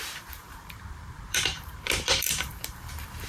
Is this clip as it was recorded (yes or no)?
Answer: no